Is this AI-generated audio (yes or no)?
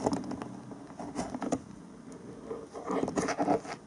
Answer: no